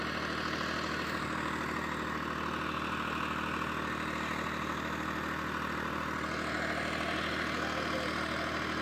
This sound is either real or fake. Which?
real